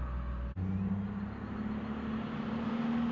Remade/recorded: recorded